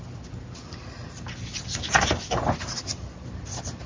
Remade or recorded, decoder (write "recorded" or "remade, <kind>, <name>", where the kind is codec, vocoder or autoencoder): recorded